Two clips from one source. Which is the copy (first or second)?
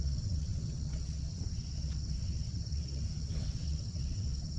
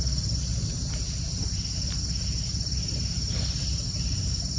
first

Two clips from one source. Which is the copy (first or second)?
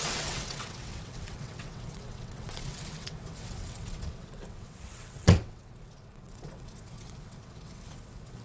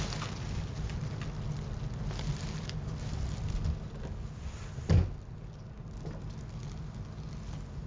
first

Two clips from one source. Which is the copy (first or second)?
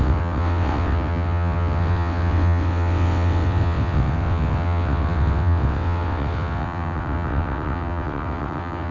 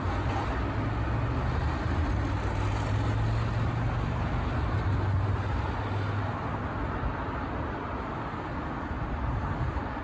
first